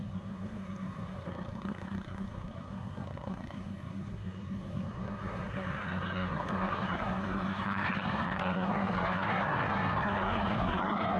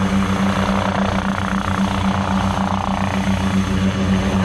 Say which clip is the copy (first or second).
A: first